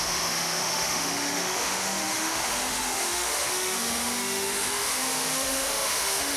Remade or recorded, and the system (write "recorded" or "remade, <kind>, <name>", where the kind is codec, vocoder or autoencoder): remade, autoencoder, DAC-VAE